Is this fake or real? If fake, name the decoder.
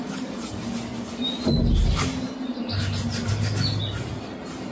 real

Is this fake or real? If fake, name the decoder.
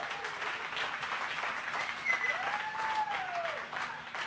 real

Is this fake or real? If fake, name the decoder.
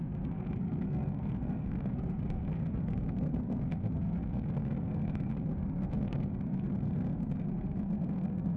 fake, codec, SNAC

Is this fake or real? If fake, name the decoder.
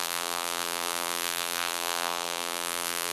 fake, vocoder, BigVGAN v2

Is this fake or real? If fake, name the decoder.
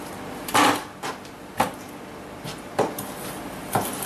real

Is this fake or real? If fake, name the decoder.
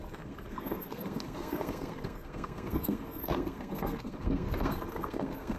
fake, codec, SNAC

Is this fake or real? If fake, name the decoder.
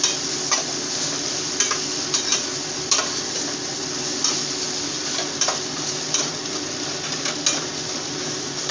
real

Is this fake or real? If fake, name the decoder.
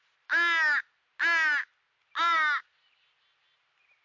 real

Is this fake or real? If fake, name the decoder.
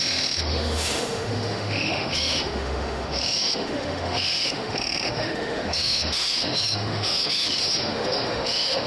fake, autoencoder, DAC-VAE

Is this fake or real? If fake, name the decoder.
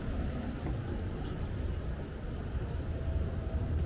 fake, vocoder, BigVGAN v2